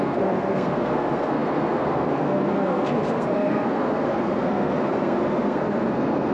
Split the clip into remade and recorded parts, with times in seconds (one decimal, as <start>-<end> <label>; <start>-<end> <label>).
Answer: 0.0-6.3 remade